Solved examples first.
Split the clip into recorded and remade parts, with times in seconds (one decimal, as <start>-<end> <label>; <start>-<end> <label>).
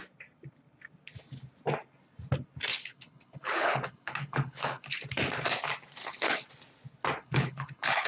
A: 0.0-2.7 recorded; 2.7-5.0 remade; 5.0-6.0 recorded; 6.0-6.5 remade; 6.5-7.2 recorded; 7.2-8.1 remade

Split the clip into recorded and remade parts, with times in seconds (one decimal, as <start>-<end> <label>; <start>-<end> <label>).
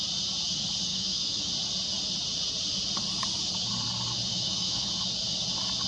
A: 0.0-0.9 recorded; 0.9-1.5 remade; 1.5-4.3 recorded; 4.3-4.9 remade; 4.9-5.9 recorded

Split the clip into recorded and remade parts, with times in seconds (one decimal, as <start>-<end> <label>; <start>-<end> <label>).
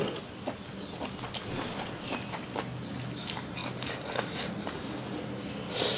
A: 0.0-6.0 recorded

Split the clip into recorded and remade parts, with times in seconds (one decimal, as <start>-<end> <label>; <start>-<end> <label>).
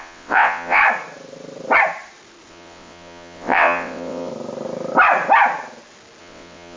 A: 0.0-0.8 remade; 0.8-2.5 recorded; 2.5-4.3 remade; 4.3-6.2 recorded; 6.2-6.8 remade